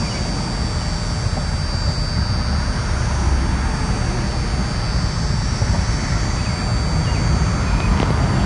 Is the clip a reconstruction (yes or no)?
no